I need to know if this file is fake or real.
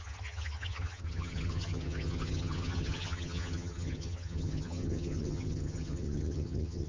fake